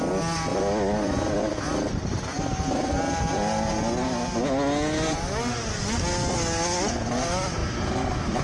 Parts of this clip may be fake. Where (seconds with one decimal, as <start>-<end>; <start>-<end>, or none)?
0.5-3.7; 7.6-8.4